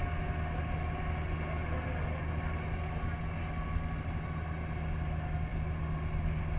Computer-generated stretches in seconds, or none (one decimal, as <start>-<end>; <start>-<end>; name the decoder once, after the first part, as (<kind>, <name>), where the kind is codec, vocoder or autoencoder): none